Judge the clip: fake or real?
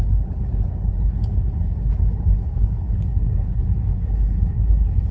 fake